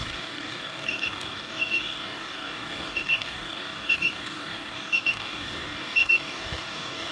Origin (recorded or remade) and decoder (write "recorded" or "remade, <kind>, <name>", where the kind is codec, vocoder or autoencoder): remade, codec, DAC